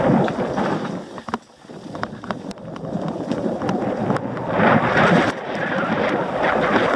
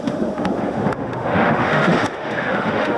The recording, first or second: first